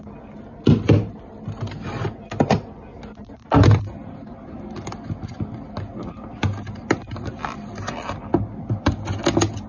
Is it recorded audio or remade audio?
recorded